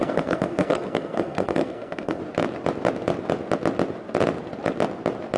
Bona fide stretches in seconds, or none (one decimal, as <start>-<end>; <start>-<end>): 2.2-5.4

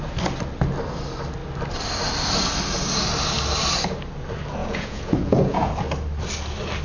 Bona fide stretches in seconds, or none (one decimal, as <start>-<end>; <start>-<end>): 0.0-4.6; 5.7-6.8

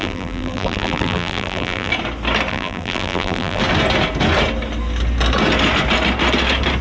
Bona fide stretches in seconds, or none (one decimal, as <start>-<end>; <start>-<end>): 1.9-2.5; 3.6-6.8

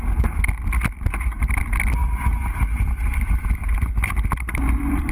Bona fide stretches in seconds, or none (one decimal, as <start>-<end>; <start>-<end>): 0.0-2.0

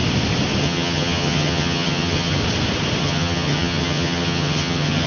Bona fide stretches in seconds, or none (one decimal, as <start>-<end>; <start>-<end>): 0.0-0.6; 2.4-3.0